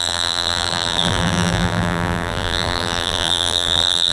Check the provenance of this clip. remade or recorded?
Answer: remade